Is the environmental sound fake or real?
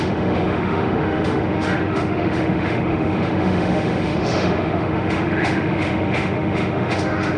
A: fake